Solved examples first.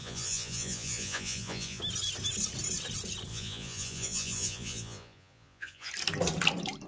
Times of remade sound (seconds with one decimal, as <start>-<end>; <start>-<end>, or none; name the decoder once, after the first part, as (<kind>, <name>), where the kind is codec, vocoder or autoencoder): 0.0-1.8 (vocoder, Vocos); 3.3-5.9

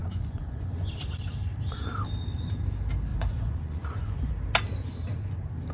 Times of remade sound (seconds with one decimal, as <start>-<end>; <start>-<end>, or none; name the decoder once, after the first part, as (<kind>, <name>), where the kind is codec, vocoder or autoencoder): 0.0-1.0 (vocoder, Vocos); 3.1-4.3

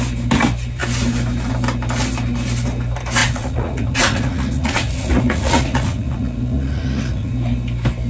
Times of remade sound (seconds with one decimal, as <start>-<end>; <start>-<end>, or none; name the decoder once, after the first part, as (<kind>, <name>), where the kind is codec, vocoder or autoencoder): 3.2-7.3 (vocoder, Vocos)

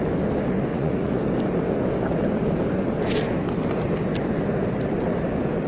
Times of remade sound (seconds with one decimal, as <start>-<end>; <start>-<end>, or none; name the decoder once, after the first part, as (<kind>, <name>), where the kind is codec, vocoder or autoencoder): 0.7-1.2 (vocoder, Vocos)

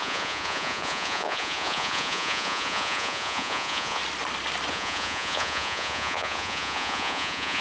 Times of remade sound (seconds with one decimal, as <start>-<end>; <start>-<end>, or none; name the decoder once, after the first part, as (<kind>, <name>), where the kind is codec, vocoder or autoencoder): 0.0-4.0 (vocoder, Vocos); 4.7-7.6

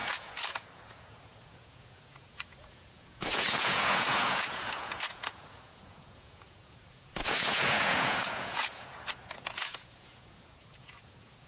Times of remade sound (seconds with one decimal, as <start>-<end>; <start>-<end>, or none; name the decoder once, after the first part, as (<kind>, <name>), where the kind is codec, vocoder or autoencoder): 0.0-11.5 (vocoder, Vocos)